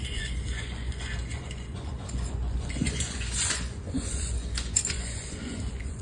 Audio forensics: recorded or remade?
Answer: remade